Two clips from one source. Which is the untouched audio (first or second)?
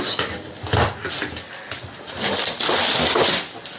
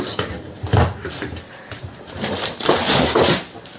first